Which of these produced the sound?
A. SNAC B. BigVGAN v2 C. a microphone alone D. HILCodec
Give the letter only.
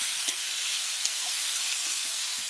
A